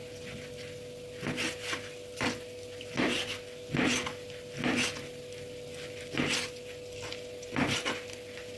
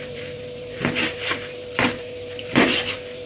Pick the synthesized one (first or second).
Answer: second